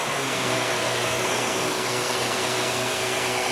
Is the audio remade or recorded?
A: remade